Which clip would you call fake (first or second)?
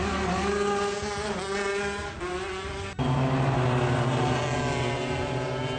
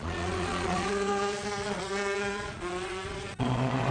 second